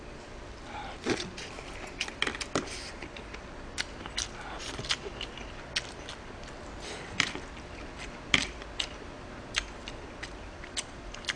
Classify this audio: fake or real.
real